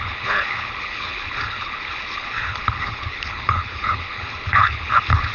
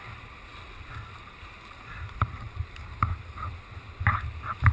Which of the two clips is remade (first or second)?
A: first